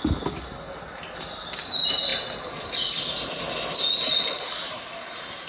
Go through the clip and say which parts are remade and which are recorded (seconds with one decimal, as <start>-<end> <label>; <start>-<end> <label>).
0.0-5.5 recorded